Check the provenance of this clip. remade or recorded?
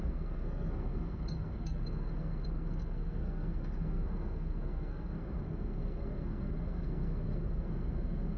remade